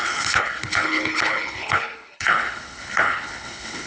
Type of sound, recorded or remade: remade